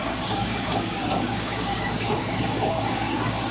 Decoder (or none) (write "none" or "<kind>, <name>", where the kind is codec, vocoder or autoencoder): codec, DAC